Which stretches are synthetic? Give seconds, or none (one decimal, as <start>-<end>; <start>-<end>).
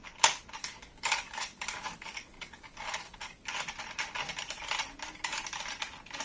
0.6-3.5